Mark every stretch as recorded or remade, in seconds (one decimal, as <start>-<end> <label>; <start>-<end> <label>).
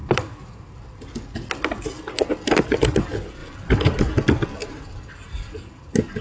0.0-0.7 remade; 0.7-4.6 recorded; 4.6-6.2 remade